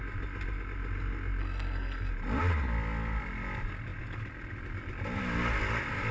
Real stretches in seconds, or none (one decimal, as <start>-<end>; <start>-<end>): 0.0-1.4; 2.1-6.1